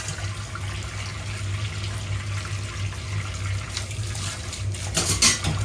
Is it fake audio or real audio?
real